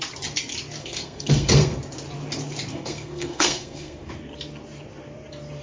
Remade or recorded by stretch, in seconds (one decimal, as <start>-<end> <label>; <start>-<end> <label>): 0.0-0.8 recorded; 0.8-1.8 remade; 1.8-2.7 recorded; 2.7-4.1 remade; 4.1-5.6 recorded

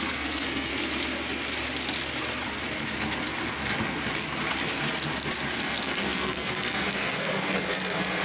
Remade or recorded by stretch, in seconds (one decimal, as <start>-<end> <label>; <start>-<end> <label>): 0.0-0.7 remade; 0.7-5.6 recorded; 5.6-8.2 remade

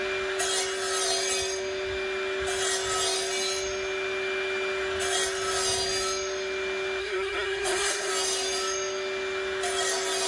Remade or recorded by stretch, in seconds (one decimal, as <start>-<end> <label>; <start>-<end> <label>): 0.0-7.0 recorded; 7.0-8.1 remade; 8.1-10.3 recorded

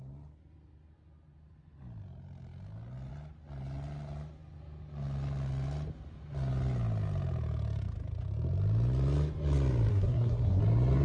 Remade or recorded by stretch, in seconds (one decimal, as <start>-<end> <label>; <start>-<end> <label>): 0.0-9.9 recorded; 9.9-10.6 remade; 10.6-11.0 recorded

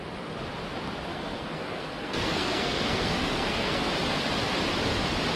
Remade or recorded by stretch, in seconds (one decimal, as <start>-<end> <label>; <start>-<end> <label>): 0.0-1.1 recorded; 1.1-3.9 remade; 3.9-5.4 recorded

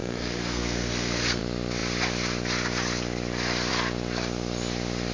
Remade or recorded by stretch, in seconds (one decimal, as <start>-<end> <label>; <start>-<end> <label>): 0.0-1.4 remade; 1.4-5.1 recorded

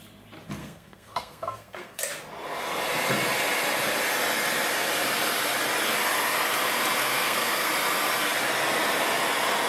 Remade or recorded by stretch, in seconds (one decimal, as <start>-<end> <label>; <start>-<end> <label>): 0.0-0.6 recorded; 0.6-2.0 remade; 2.0-7.0 recorded; 7.0-7.7 remade; 7.7-9.7 recorded